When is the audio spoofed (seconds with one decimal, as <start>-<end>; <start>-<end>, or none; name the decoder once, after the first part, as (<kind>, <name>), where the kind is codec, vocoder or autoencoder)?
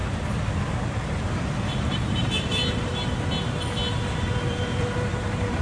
0.8-2.9 (vocoder, BigVGAN v2); 3.9-5.6